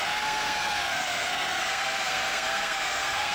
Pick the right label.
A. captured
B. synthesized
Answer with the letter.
B